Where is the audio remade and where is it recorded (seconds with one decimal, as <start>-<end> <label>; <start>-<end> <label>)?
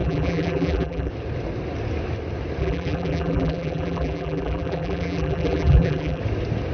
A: 0.0-1.1 remade; 1.1-2.6 recorded; 2.6-6.2 remade; 6.2-6.7 recorded